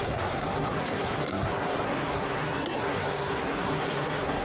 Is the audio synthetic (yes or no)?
yes